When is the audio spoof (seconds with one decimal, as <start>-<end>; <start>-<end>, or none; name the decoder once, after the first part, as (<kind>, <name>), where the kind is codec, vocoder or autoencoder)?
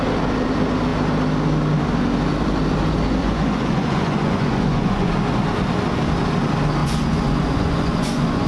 3.2-5.1 (vocoder, Vocos); 6.8-8.5